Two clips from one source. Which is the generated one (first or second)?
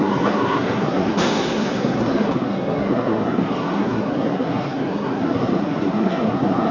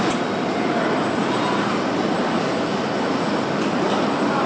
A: first